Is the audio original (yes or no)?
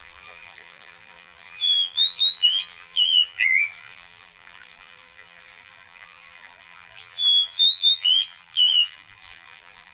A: no